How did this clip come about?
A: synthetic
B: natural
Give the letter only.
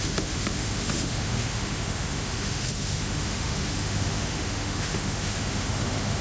A